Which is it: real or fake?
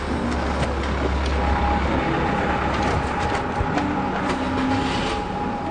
real